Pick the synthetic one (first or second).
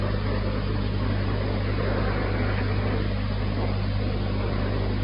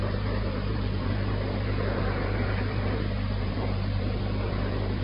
second